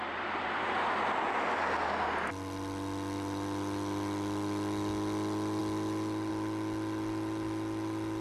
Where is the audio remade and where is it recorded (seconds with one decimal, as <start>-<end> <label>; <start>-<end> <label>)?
0.0-8.2 recorded